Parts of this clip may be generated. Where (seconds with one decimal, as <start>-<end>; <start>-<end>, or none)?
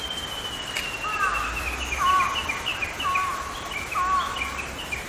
none